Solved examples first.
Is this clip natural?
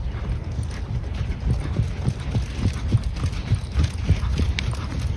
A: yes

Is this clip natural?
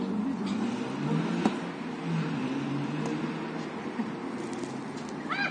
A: yes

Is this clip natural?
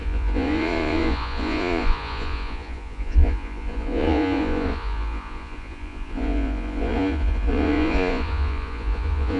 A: no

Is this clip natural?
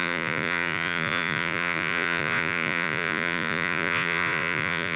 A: no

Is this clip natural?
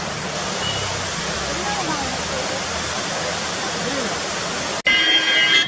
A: yes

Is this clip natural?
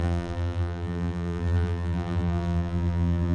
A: no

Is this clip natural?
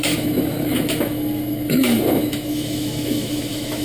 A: no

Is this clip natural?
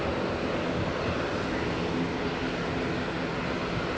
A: yes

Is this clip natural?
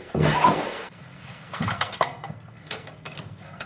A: no